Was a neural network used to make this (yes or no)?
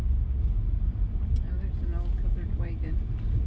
no